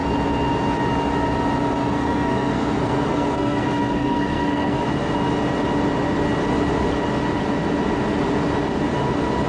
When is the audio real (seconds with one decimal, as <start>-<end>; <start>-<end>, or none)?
0.0-1.8; 4.8-9.5